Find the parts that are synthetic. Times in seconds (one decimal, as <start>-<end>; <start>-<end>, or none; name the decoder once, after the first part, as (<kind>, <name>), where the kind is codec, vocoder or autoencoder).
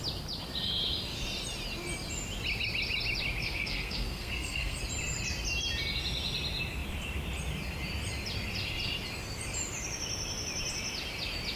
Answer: 3.4-4.8 (codec, SNAC)